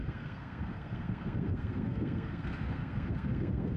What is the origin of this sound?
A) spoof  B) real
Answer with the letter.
A